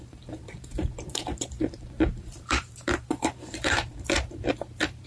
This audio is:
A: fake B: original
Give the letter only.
A